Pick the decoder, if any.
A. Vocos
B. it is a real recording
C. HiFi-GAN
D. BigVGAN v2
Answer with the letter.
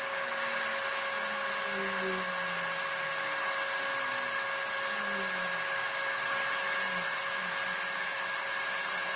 B